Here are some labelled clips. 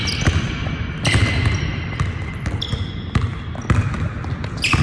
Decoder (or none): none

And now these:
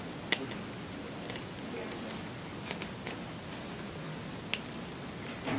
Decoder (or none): none